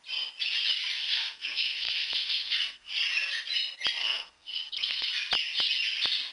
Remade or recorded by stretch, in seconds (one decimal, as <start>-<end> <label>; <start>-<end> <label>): 0.0-1.0 recorded; 1.0-2.9 remade; 2.9-4.0 recorded; 4.0-5.1 remade; 5.1-6.3 recorded